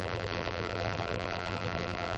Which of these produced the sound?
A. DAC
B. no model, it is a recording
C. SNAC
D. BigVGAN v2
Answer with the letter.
D